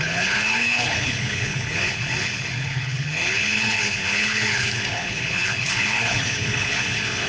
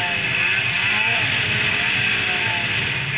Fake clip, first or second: first